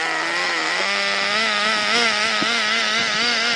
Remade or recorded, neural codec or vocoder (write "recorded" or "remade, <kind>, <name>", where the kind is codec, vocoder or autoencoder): recorded